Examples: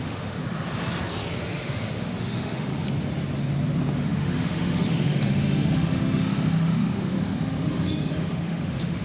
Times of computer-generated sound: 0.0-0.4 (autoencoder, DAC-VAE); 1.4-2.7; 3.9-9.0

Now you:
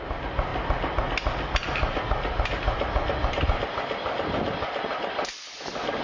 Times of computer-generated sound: none

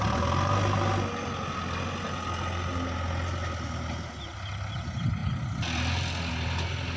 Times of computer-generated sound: none

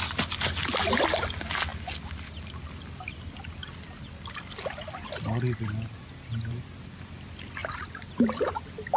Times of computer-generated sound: none

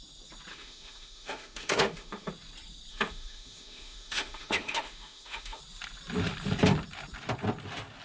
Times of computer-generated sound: 0.5-2.3 (autoencoder, DAC-VAE); 2.9-5.6

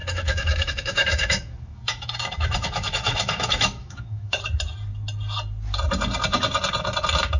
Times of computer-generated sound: 0.0-4.4 (autoencoder, DAC-VAE)